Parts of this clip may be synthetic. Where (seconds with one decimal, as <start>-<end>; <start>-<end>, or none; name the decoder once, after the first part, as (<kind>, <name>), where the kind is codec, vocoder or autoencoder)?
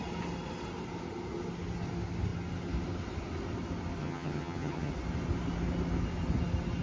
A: 4.0-4.9 (vocoder, HiFi-GAN)